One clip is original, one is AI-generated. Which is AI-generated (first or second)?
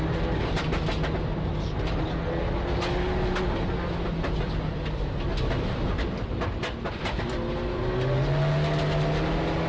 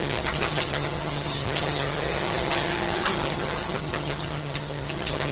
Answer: second